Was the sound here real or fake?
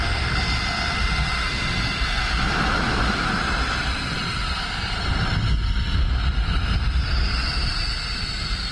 real